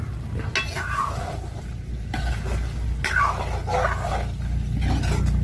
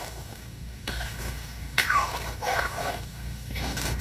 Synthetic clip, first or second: second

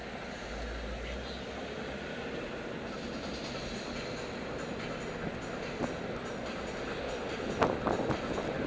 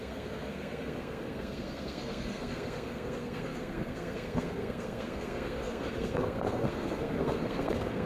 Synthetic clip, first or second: second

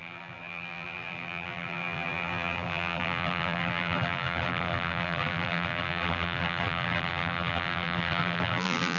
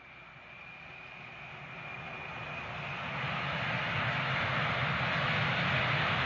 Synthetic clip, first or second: first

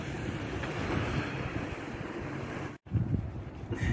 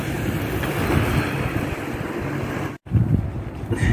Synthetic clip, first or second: first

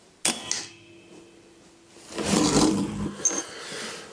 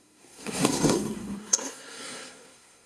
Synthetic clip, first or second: second